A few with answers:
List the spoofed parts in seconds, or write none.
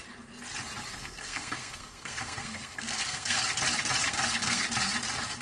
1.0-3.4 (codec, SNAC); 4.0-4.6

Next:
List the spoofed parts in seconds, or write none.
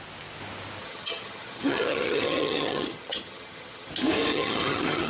0.8-3.9 (vocoder, HiFi-GAN); 4.3-5.1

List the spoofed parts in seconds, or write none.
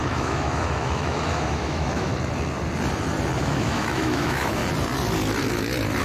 0.0-2.1 (autoencoder, DAC-VAE); 3.4-4.6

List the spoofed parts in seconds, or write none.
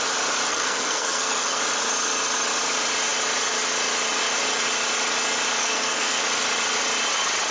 0.5-1.6 (codec, SNAC); 5.6-6.2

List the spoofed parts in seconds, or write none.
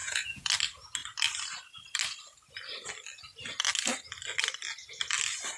0.0-0.5 (vocoder, Vocos)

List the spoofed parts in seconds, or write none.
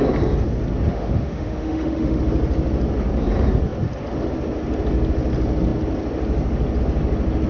0.9-2.2 (autoencoder, DAC-VAE)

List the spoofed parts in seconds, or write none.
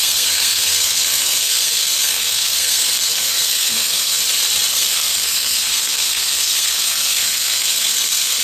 0.0-4.2 (codec, SNAC); 4.7-8.4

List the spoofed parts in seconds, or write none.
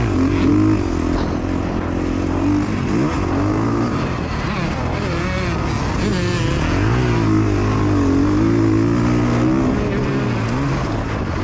none